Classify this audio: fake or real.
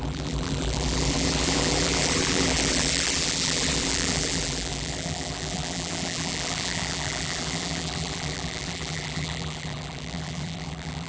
fake